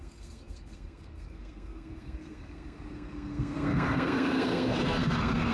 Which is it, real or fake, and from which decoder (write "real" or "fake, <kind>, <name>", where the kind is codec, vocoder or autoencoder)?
fake, codec, SNAC